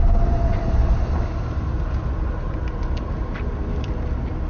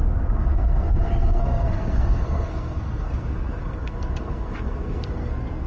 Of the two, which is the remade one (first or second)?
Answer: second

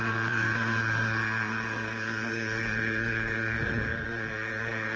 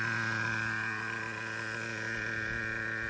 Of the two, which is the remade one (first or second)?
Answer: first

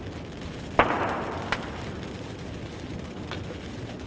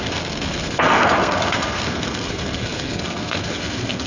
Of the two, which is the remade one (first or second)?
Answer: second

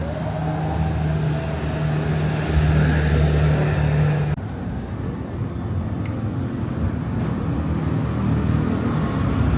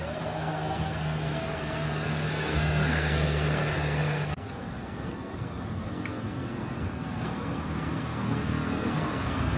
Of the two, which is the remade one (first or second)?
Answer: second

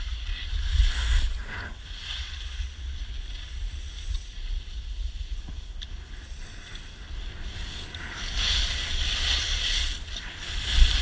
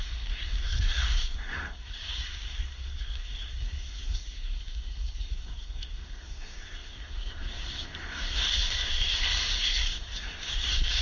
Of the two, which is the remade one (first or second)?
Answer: second